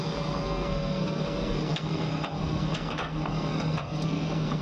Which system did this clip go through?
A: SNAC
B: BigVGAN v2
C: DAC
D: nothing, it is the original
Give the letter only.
A